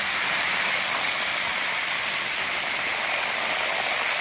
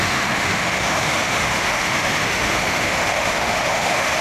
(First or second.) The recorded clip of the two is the first